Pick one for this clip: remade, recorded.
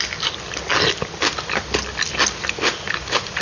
recorded